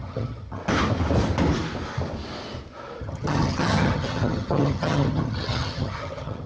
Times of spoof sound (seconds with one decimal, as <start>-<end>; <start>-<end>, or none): 0.0-0.6; 3.0-6.5